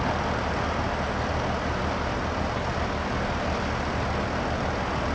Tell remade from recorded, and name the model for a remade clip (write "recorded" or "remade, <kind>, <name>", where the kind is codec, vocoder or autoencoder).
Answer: recorded